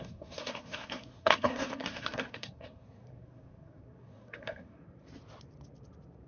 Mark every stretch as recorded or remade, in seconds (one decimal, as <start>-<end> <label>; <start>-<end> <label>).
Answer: 0.0-4.8 remade; 4.8-6.3 recorded